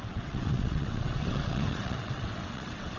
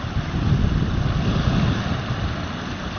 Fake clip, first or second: first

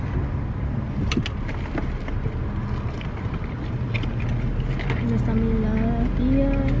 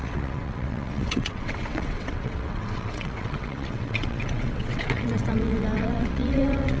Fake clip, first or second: second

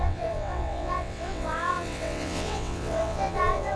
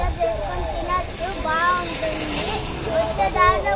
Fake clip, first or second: first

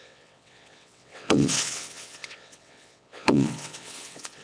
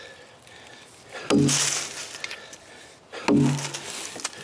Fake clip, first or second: first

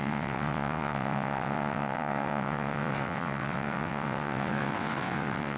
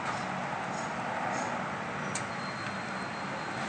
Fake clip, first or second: first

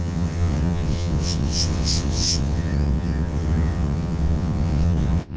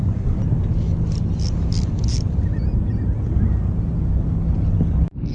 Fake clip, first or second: first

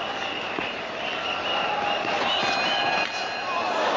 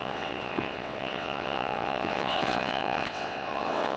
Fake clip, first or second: second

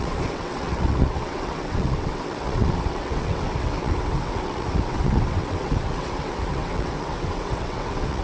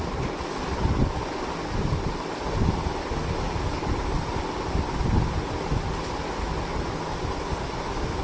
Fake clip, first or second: first